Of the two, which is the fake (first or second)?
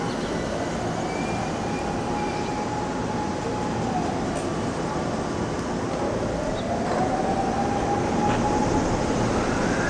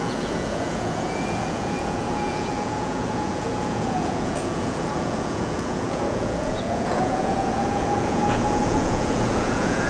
second